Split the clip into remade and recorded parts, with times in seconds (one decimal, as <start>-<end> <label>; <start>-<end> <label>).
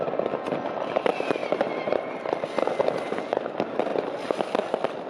0.0-5.1 recorded